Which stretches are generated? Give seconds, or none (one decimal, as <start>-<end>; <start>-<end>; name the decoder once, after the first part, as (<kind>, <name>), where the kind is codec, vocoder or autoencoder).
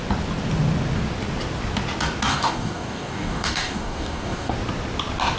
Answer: 2.3-4.5 (codec, DAC)